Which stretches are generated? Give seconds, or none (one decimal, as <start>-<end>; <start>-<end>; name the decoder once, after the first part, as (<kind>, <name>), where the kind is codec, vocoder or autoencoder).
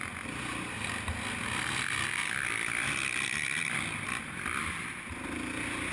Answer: none